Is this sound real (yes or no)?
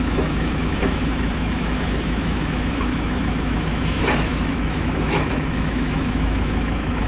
no